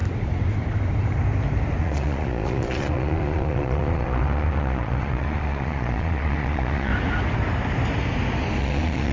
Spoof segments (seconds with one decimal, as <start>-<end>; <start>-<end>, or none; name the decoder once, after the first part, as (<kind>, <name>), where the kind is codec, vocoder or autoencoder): 1.8-6.9 (vocoder, Vocos); 8.6-9.1